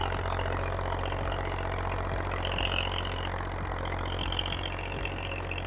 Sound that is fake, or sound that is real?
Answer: real